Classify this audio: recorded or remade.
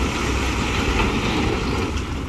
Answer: recorded